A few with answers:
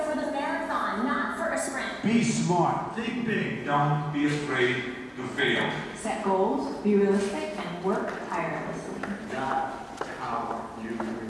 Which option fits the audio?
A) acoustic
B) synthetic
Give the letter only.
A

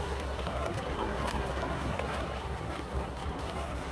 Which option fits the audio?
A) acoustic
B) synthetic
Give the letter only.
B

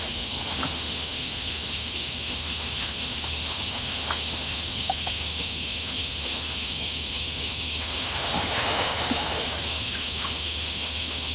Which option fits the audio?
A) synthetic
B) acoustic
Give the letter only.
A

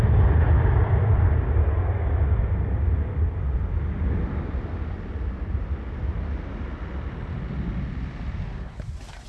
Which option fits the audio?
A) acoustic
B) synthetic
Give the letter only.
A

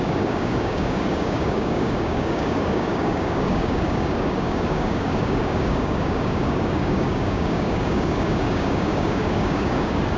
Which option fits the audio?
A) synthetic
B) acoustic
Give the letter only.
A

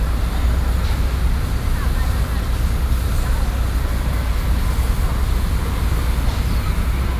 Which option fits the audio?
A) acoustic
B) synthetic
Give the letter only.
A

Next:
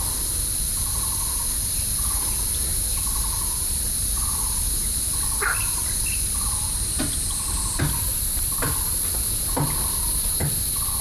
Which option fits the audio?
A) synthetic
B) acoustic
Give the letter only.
B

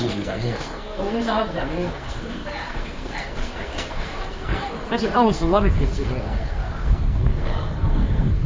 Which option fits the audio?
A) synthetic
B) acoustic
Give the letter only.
A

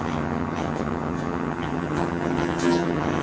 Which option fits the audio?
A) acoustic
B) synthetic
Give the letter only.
B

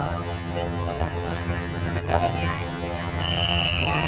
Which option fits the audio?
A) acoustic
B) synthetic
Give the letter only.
B